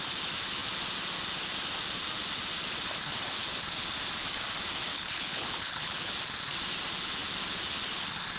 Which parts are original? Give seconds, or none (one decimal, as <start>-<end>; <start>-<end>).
0.0-4.9; 6.1-8.4